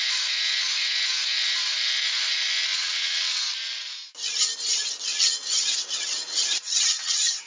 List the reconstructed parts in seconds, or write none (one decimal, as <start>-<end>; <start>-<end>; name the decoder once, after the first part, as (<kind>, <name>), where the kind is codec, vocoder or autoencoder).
2.7-3.4 (vocoder, WaveNeXt); 5.1-7.5